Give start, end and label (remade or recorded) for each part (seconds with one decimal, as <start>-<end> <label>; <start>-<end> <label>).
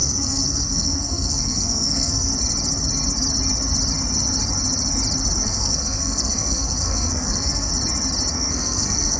0.0-2.3 remade; 2.3-5.4 recorded; 5.4-7.7 remade; 7.7-8.3 recorded; 8.3-9.2 remade